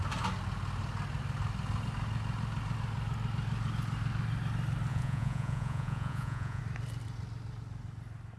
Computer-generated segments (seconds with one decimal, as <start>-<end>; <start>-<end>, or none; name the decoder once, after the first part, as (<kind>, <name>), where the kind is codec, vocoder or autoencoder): 4.9-6.6 (vocoder, Vocos)